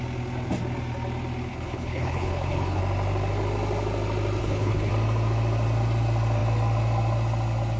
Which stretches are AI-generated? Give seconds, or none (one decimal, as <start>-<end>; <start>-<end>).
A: 1.5-2.8; 4.4-4.9